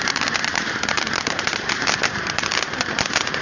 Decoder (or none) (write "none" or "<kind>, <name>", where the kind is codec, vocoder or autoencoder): vocoder, BigVGAN v2